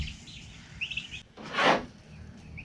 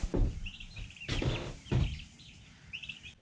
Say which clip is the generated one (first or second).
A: second